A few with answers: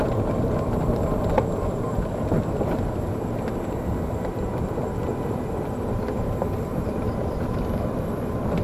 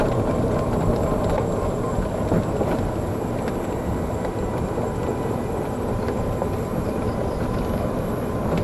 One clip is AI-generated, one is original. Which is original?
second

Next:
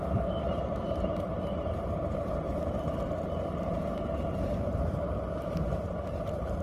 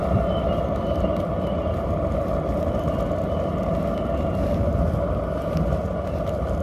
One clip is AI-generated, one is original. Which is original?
second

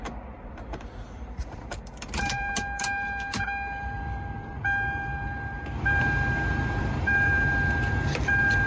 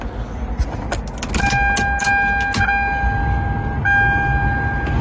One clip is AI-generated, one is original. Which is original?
second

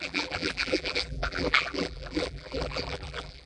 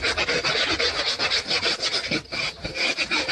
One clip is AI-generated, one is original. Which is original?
second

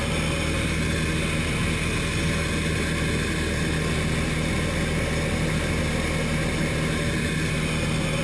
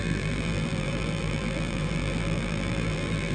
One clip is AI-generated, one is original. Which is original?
first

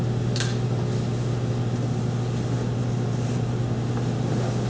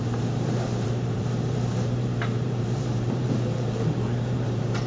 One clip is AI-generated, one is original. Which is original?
first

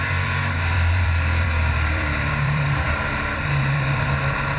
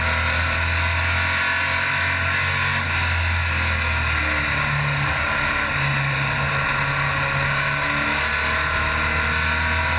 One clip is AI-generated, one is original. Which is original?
second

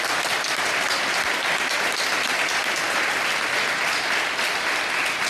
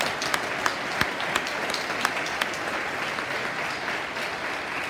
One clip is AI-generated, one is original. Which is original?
second